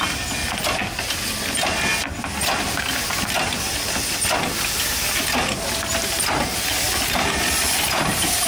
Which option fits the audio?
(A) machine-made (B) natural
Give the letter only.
B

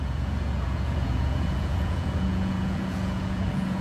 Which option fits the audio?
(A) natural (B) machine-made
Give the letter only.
B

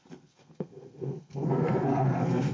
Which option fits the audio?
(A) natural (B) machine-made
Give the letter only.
B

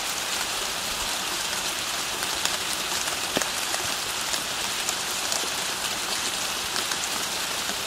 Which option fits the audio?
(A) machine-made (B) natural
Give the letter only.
B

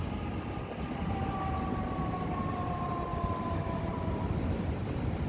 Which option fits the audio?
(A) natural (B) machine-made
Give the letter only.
A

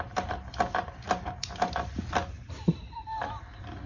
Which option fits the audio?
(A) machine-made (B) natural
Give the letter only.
B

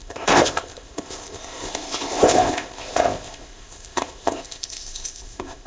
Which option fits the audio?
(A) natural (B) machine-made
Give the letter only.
B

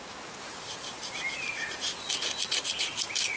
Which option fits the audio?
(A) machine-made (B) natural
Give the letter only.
B